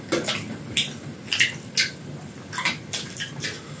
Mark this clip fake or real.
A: real